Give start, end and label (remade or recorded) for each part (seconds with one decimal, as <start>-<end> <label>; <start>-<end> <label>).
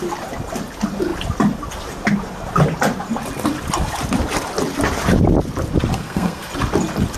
0.0-5.9 recorded; 5.9-6.5 remade; 6.5-7.2 recorded